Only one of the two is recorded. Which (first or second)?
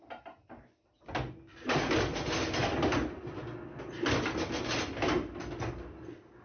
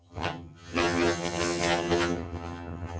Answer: first